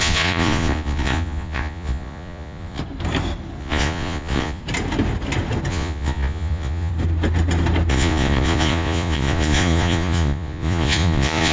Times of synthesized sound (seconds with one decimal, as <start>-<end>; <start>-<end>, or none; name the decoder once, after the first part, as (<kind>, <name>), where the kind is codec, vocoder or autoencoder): 0.0-2.8 (vocoder, Vocos); 3.6-4.6; 5.7-6.9; 7.9-11.5